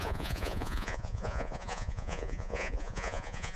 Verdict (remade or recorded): remade